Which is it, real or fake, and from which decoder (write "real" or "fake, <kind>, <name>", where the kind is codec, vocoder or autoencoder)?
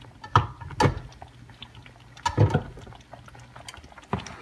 real